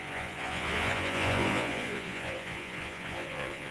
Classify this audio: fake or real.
fake